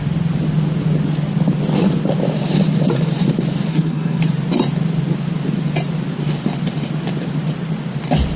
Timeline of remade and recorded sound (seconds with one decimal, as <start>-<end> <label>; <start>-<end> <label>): 0.0-3.7 recorded; 3.7-4.2 remade; 4.2-8.4 recorded